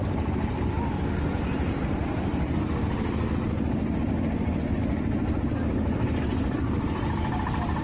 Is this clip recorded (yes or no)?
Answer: yes